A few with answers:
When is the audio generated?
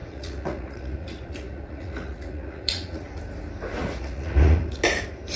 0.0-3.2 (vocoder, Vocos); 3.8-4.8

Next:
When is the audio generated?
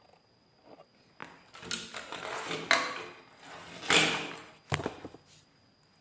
none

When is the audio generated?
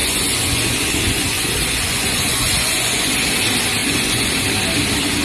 0.0-3.1 (vocoder, Vocos); 3.8-4.3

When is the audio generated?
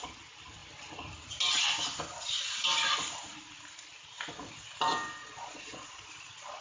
5.2-5.9 (vocoder, Vocos)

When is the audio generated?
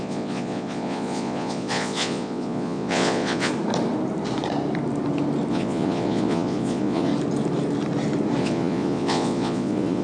0.0-3.5 (vocoder, Vocos); 5.5-7.1; 8.4-10.0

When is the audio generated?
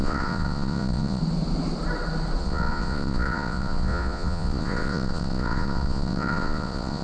0.0-1.2 (vocoder, Vocos); 2.4-7.0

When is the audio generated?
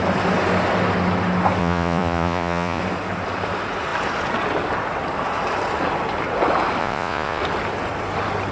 1.6-2.8 (vocoder, Vocos); 6.8-7.4